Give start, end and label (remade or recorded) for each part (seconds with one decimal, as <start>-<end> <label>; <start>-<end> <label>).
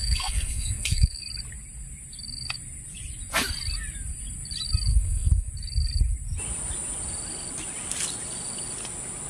0.0-1.2 remade; 1.2-4.9 recorded; 4.9-5.5 remade; 5.5-9.3 recorded